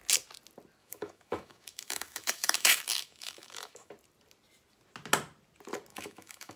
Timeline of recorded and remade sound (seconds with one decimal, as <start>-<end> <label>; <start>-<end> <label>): 0.0-0.8 recorded; 0.8-3.9 remade; 3.9-5.9 recorded; 5.9-6.6 remade